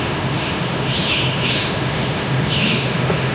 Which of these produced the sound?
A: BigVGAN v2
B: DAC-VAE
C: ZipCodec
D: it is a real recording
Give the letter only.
B